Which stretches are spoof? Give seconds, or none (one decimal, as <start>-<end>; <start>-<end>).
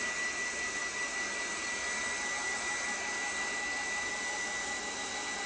none